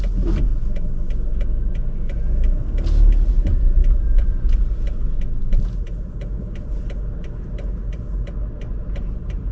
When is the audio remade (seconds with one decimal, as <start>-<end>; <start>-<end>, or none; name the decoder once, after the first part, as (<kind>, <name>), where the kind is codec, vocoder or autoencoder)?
none